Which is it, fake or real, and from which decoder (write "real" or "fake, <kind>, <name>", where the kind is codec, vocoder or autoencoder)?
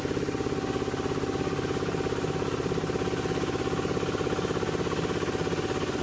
real